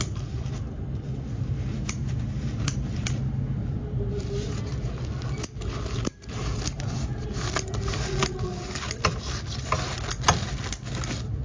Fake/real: real